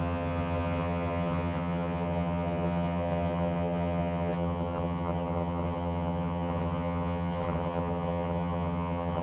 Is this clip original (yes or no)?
no